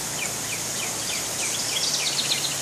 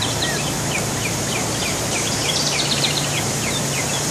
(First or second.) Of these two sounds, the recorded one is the first